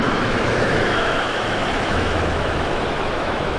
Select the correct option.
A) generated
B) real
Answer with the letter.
A